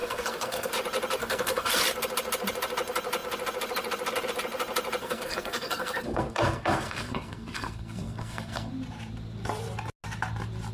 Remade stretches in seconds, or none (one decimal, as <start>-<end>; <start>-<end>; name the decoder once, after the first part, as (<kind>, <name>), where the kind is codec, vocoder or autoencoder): 0.0-0.7 (codec, SNAC); 1.2-1.8; 5.0-8.7